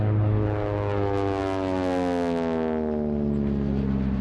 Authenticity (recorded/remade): recorded